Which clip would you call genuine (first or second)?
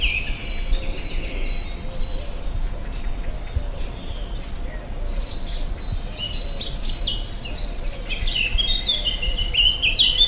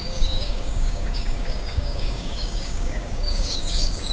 first